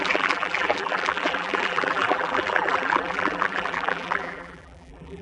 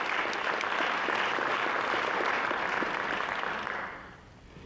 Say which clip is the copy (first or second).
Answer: first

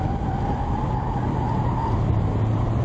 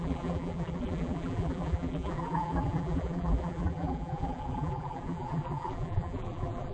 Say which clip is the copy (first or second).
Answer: second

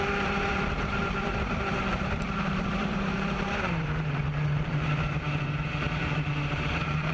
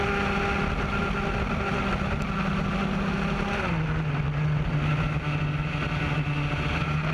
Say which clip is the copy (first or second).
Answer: first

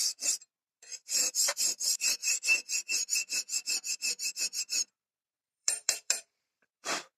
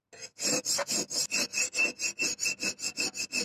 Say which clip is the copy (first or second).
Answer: first